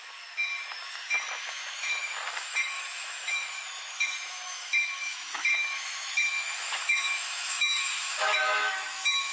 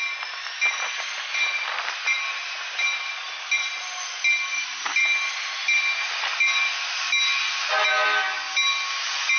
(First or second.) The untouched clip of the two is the second